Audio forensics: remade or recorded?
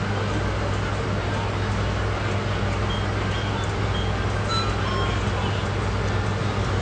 recorded